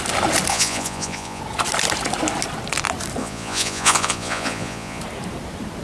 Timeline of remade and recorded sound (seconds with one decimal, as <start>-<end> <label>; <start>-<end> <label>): 0.0-0.5 recorded; 0.5-1.4 remade; 1.4-3.2 recorded; 3.2-5.0 remade; 5.0-5.8 recorded